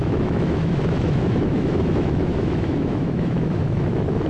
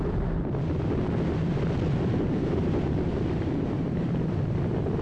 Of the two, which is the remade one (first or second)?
first